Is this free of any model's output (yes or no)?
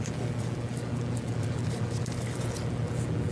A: yes